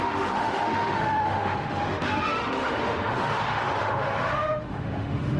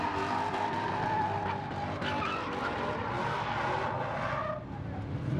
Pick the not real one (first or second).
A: first